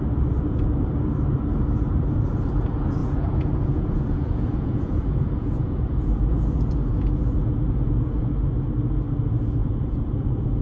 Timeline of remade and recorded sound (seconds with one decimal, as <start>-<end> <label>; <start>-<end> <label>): 0.0-3.0 recorded; 3.0-8.3 remade; 8.3-9.6 recorded; 9.6-10.6 remade